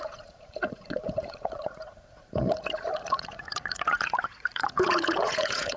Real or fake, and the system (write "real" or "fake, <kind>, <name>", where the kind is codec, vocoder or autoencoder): fake, vocoder, Vocos